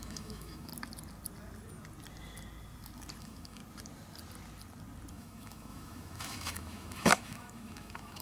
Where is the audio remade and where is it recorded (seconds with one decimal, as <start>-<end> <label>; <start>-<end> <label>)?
0.0-0.7 remade; 0.7-3.2 recorded; 3.2-3.6 remade; 3.6-5.1 recorded; 5.1-8.2 remade